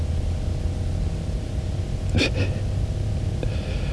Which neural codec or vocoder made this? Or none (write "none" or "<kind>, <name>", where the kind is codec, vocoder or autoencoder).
none